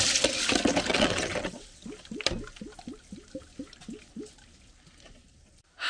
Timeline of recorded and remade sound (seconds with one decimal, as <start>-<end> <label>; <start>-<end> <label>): 0.0-0.9 recorded; 0.9-1.8 remade; 1.8-5.9 recorded